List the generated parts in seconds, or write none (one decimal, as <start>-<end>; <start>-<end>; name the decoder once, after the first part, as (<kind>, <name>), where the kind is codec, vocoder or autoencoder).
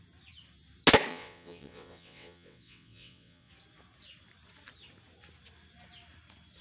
1.1-3.5 (vocoder, WaveNeXt)